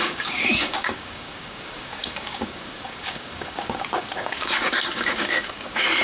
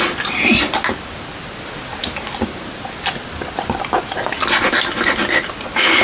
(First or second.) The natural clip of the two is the second